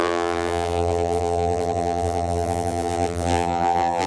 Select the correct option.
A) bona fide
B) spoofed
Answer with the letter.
B